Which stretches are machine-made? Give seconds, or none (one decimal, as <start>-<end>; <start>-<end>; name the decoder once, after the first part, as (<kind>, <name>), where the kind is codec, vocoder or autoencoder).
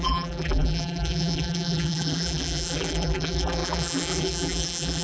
0.0-5.0 (vocoder, BigVGAN v2)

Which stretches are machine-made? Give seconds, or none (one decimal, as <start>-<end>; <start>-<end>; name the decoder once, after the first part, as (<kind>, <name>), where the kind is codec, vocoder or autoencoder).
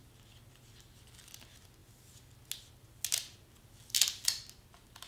none